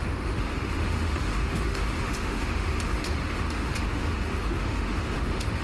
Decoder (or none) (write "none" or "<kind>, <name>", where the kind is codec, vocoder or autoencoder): autoencoder, DAC-VAE